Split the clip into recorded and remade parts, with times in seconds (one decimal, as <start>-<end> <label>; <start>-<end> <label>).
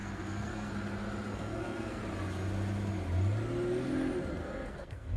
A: 0.0-0.7 remade; 0.7-1.3 recorded; 1.3-2.0 remade; 2.0-4.4 recorded; 4.4-5.2 remade